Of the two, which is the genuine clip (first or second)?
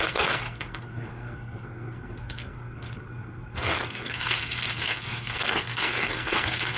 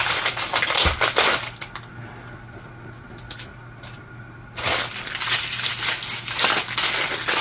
second